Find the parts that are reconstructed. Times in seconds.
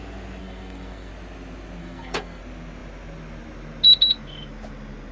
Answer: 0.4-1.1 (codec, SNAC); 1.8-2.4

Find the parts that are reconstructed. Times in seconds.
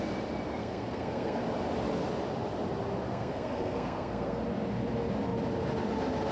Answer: 0.5-1.4 (codec, SNAC); 3.1-4.4